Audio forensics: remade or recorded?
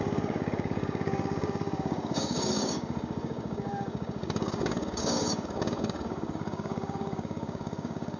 remade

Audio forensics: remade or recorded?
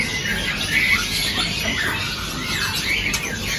recorded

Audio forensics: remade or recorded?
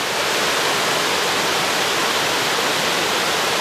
recorded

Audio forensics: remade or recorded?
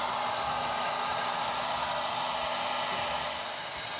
recorded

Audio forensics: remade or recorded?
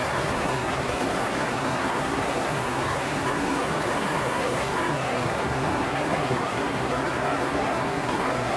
remade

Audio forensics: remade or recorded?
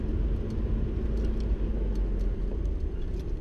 recorded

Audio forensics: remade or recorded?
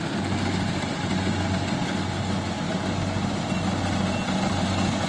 recorded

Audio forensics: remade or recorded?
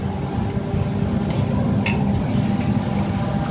recorded